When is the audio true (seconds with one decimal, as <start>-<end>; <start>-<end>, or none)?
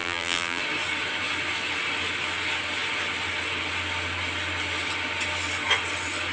0.6-6.3